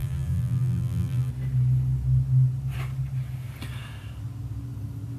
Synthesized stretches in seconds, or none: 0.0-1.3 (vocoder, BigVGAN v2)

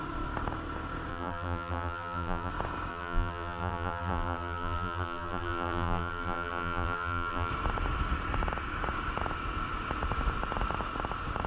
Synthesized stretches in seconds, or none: 1.1-2.5 (vocoder, BigVGAN v2); 2.9-7.5

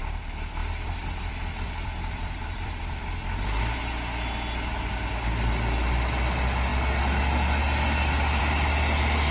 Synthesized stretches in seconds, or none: 0.6-3.6 (vocoder, BigVGAN v2)

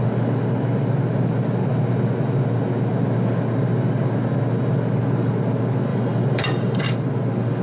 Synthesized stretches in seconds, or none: 5.9-6.8 (vocoder, BigVGAN v2)

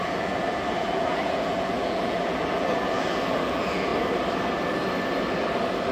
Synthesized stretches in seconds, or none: 0.0-3.9 (vocoder, BigVGAN v2)

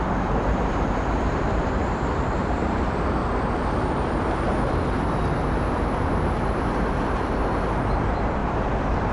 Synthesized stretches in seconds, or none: 0.0-3.2 (vocoder, BigVGAN v2); 4.7-9.1

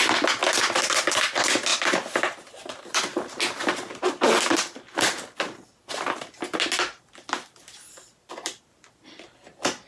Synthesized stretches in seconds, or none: 0.0-1.7 (vocoder, BigVGAN v2); 2.5-3.1; 3.7-5.8; 8.3-9.9

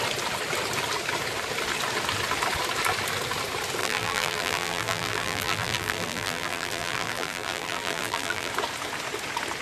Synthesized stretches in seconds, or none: 3.8-8.5 (vocoder, BigVGAN v2)